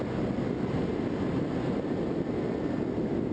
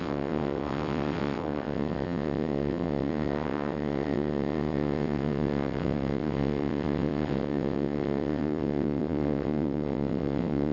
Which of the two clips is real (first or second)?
first